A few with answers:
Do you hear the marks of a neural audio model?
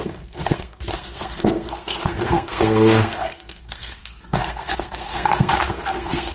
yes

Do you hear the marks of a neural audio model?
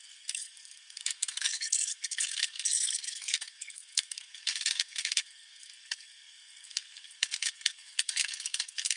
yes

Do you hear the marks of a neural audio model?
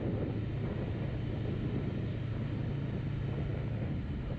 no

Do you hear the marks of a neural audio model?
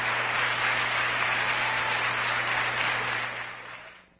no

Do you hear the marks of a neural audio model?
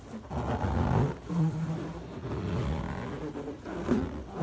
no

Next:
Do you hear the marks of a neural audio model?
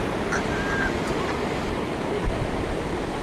no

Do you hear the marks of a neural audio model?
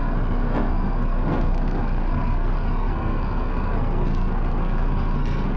yes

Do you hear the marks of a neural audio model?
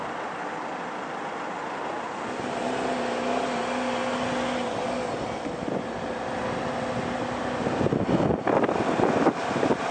no